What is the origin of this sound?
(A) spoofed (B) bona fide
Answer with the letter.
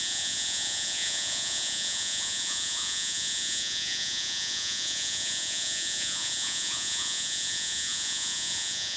A